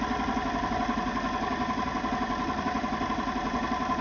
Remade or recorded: recorded